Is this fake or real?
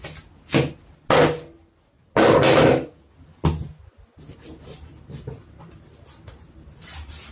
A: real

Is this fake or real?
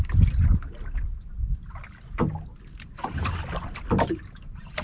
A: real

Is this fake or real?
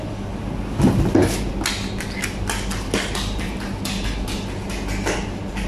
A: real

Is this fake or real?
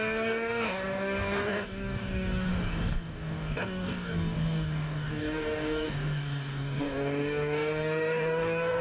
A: fake